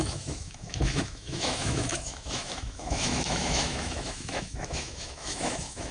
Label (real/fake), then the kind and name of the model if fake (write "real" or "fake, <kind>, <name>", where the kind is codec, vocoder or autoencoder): fake, autoencoder, DAC-VAE